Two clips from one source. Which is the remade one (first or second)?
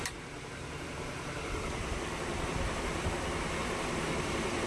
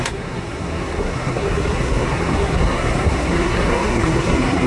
second